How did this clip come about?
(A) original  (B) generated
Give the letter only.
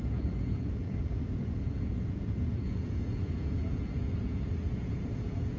B